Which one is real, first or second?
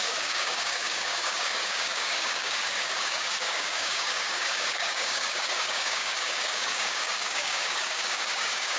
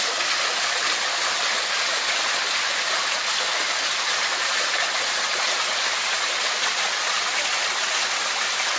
second